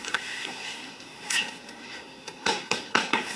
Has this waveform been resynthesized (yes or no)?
yes